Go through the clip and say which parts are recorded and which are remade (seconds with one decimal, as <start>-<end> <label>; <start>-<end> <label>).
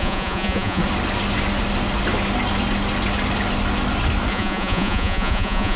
0.0-0.8 remade; 0.8-4.3 recorded; 4.3-5.8 remade